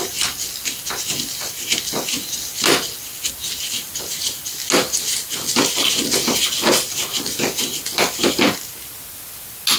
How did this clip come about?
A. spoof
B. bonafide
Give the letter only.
B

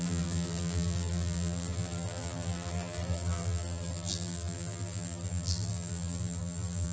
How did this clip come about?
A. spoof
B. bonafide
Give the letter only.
A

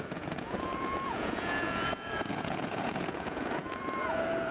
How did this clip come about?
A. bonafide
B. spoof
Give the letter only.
B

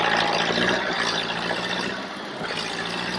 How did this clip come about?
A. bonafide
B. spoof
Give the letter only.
A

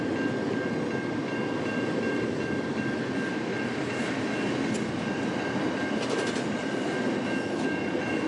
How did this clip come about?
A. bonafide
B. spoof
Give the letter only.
A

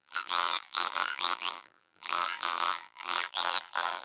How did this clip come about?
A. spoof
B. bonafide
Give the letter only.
A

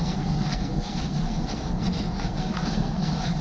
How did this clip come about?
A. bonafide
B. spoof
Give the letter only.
B